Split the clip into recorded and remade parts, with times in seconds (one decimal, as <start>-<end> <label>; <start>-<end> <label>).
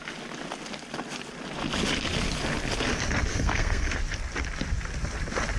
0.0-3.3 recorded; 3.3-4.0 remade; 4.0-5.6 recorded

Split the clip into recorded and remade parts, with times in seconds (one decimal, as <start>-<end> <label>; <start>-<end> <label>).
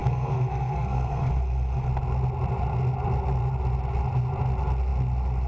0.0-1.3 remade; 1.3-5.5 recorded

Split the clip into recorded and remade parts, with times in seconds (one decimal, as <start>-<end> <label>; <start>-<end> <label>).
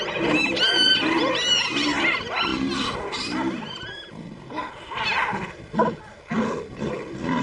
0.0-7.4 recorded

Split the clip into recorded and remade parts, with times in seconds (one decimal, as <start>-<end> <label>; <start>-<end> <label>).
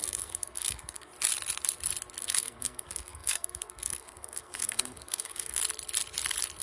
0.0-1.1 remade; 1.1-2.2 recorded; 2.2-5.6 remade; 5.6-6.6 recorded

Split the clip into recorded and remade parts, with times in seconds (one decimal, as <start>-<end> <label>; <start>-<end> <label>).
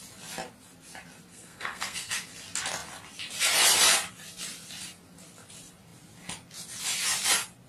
0.0-1.3 recorded; 1.3-2.3 remade; 2.3-7.7 recorded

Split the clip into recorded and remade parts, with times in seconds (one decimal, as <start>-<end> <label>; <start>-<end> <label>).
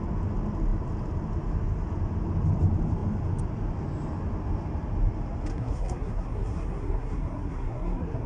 0.0-5.5 recorded; 5.5-8.3 remade